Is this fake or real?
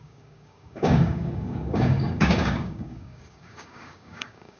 fake